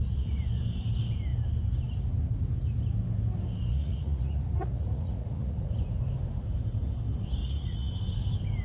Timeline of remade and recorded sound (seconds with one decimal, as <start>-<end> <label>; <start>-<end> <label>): 0.0-3.7 recorded; 3.7-5.7 remade; 5.7-7.4 recorded; 7.4-7.9 remade; 7.9-8.6 recorded